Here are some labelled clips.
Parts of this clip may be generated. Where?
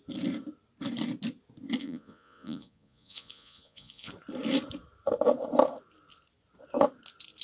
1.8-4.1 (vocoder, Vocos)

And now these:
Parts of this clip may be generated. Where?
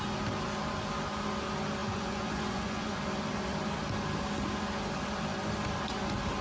1.8-3.0 (vocoder, Vocos)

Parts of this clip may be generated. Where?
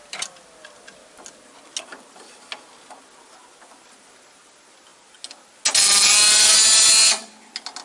none